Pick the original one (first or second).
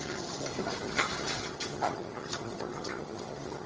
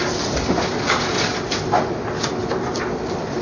second